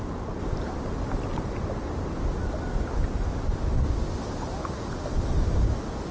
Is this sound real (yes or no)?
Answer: yes